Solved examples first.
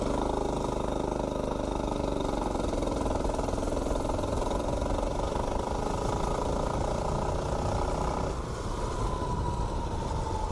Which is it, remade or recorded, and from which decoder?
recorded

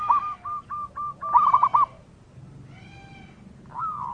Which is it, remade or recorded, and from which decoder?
recorded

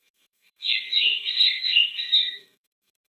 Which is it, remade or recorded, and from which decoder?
remade, codec, SNAC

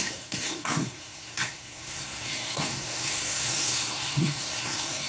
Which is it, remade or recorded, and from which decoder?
remade, codec, SNAC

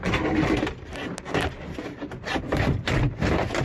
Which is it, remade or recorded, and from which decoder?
recorded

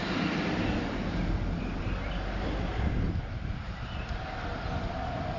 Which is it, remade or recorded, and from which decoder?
recorded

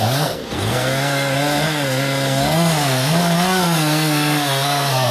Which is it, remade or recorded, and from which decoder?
remade, codec, SNAC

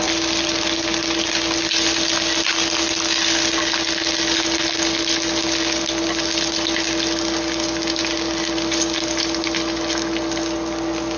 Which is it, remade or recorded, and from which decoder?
recorded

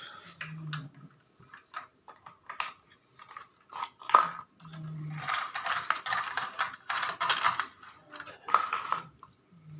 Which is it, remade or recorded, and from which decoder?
recorded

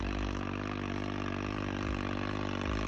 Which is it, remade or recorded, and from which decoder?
recorded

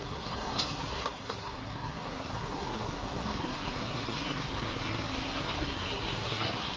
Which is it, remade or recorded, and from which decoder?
remade, codec, SNAC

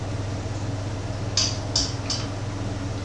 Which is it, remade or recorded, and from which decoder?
recorded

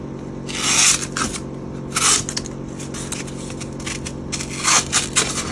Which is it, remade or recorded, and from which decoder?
recorded